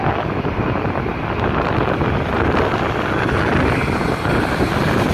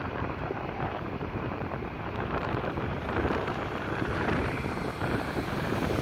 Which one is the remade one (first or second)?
second